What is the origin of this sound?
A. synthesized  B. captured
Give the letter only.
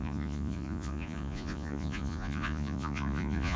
A